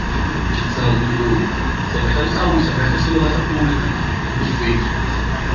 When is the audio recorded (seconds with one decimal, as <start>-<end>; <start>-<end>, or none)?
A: 0.0-1.7; 5.0-5.5